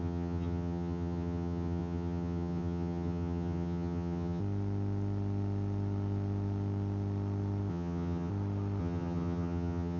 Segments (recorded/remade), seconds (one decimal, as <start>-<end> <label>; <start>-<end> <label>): 0.0-4.4 remade; 4.4-7.7 recorded; 7.7-8.3 remade; 8.3-8.8 recorded; 8.8-10.0 remade